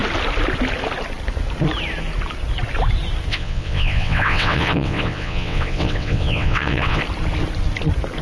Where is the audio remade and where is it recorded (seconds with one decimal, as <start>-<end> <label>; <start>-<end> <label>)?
0.0-3.3 recorded; 3.3-7.0 remade; 7.0-8.2 recorded